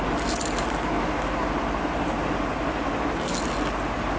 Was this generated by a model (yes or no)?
no